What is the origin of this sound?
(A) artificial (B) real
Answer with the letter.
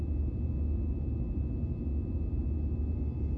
B